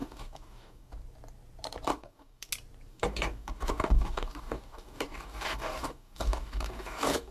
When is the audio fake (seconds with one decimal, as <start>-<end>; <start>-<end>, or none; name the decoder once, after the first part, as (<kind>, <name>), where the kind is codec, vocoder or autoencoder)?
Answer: 0.0-0.9 (codec, DAC); 1.9-2.5; 2.9-7.3